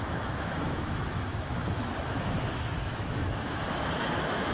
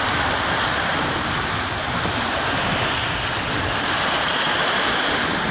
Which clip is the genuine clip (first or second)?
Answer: second